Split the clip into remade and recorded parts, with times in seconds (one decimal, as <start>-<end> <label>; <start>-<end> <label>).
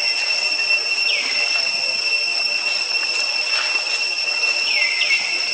0.0-0.8 recorded; 0.8-1.3 remade; 1.3-5.5 recorded